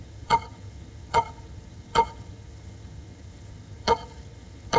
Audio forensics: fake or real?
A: fake